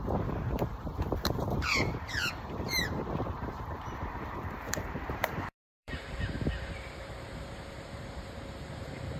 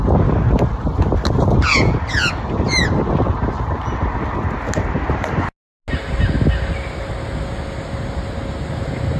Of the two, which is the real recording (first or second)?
second